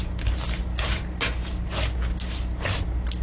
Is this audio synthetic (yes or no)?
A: no